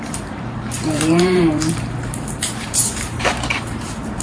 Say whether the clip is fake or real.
fake